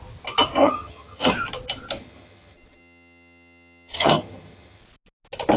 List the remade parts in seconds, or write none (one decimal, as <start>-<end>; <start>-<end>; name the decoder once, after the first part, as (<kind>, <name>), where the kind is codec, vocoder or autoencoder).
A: 0.6-1.3 (vocoder, HiFi-GAN); 2.0-4.8